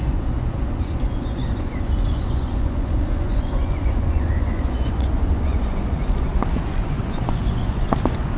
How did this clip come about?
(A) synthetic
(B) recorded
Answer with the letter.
A